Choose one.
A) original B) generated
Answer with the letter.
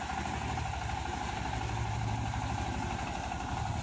B